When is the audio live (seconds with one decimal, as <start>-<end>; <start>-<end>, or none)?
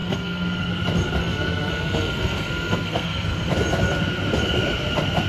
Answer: 0.7-1.2; 3.5-5.3